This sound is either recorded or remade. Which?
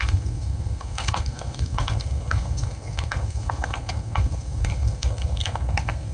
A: remade